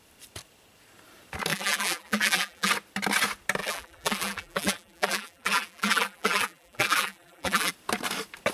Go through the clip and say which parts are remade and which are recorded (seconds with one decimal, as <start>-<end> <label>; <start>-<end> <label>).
0.0-1.5 recorded; 1.5-2.7 remade; 2.7-3.6 recorded; 3.6-7.7 remade; 7.7-8.5 recorded